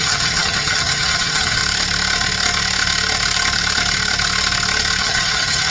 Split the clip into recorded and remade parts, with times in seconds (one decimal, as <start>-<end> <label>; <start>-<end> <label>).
0.0-1.6 remade; 1.6-5.0 recorded; 5.0-5.7 remade